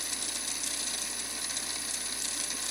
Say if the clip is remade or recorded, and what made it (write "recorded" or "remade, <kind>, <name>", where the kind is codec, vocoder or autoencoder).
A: recorded